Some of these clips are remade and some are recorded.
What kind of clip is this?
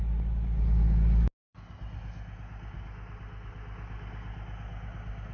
recorded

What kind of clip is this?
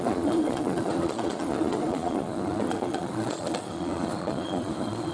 remade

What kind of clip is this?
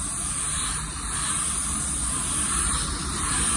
recorded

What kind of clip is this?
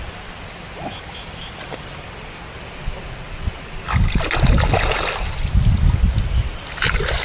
recorded